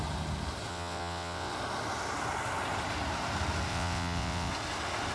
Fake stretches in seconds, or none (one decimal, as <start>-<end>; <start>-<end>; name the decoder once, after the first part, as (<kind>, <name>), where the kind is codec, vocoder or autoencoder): 0.7-1.5 (vocoder, WaveNeXt); 3.7-4.5